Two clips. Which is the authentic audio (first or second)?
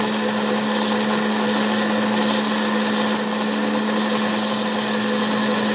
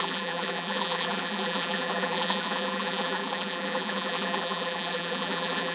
first